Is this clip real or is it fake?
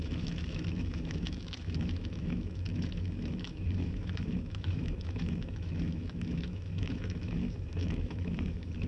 fake